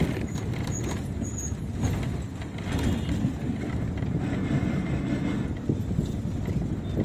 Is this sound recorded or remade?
recorded